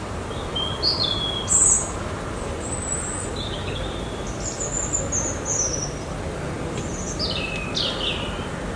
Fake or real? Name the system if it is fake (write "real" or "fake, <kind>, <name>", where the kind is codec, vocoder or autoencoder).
real